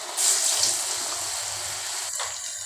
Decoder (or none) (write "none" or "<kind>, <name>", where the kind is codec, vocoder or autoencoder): none